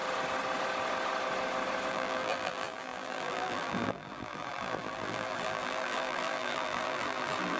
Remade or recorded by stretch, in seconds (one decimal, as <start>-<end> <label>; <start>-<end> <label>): 0.0-1.9 recorded; 1.9-7.6 remade